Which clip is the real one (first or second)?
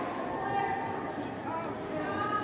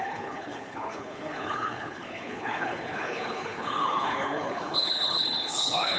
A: first